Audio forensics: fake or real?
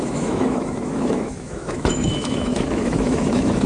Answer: fake